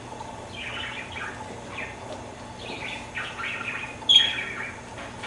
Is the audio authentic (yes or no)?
yes